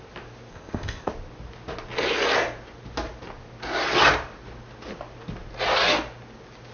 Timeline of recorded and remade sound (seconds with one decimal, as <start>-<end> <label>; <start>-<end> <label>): 0.0-0.5 recorded; 0.5-1.1 remade; 1.1-6.7 recorded